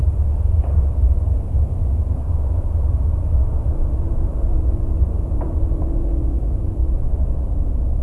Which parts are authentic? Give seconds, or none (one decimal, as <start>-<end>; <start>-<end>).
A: 6.8-7.4